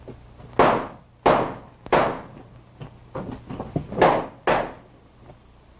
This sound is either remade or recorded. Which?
recorded